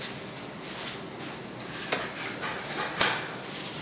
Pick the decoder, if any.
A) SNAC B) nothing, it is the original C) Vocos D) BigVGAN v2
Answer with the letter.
B